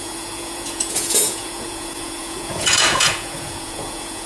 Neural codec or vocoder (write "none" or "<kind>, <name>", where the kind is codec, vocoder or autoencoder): vocoder, Vocos